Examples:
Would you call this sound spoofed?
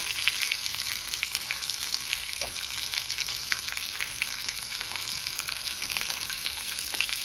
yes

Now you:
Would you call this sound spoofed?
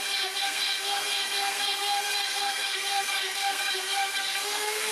yes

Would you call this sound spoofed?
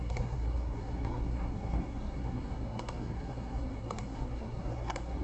yes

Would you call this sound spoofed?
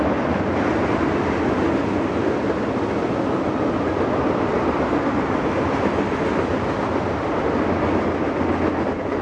no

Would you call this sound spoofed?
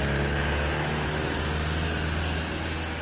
no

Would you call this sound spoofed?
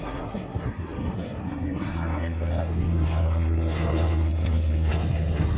yes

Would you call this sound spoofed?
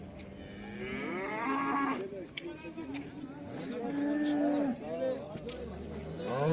no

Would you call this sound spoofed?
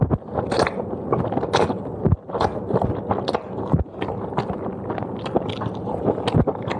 no